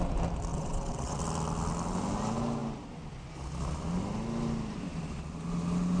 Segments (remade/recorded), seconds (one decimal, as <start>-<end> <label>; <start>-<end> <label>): 0.0-0.5 recorded; 0.5-1.2 remade; 1.2-6.0 recorded